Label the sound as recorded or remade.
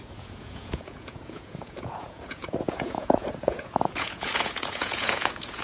remade